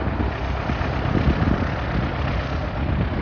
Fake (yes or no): no